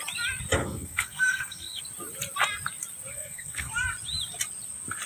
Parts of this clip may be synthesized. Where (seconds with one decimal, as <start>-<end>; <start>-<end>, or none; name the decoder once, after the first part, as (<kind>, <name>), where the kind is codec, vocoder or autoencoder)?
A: 0.6-1.8 (codec, SNAC); 3.1-3.7